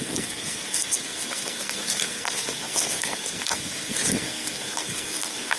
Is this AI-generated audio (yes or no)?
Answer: yes